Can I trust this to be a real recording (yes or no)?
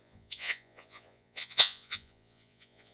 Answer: no